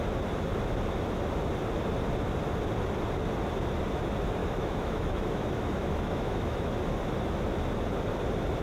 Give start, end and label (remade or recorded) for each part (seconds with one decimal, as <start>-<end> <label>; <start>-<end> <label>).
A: 0.0-4.4 recorded; 4.4-6.7 remade; 6.7-8.6 recorded